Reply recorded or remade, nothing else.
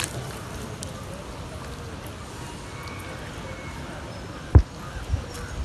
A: recorded